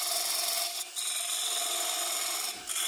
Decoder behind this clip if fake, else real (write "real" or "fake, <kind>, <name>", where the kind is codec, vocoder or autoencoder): real